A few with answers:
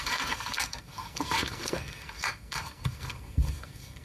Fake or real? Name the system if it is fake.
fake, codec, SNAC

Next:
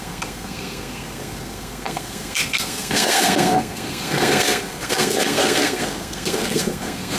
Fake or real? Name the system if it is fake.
fake, codec, SNAC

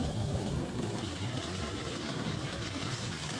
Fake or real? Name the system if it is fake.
fake, codec, SNAC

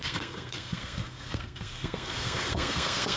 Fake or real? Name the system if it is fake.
fake, codec, SNAC